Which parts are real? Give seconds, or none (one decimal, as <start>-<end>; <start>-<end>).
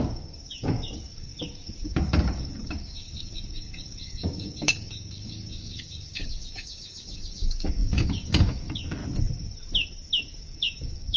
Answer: 9.0-10.4